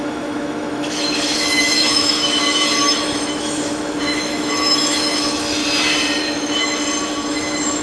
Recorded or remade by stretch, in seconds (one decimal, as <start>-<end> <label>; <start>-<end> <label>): 0.0-5.6 remade; 5.6-6.2 recorded; 6.2-6.8 remade; 6.8-7.3 recorded; 7.3-7.8 remade